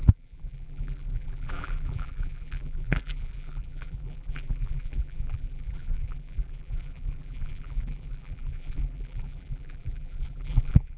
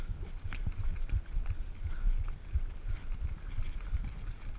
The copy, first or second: first